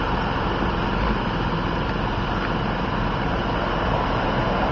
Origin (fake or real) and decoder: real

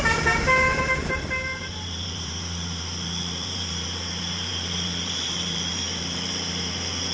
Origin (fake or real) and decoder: fake, vocoder, BigVGAN v2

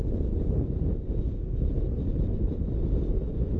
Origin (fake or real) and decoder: real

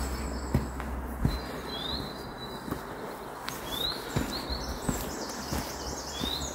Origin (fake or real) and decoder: real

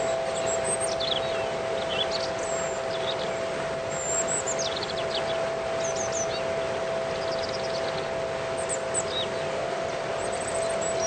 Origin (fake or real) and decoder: real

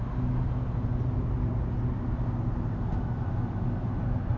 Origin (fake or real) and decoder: real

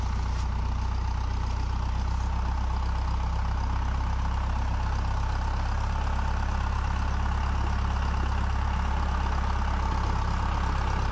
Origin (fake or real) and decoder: real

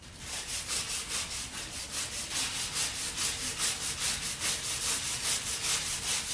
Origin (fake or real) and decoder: real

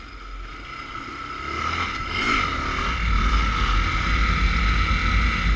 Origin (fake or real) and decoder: real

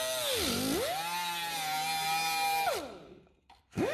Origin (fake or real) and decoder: real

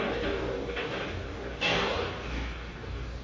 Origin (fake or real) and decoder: fake, codec, DAC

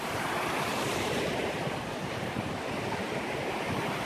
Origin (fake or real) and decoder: fake, vocoder, BigVGAN v2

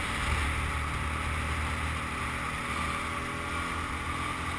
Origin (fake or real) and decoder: real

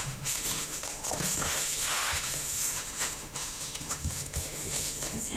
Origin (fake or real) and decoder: fake, autoencoder, DAC-VAE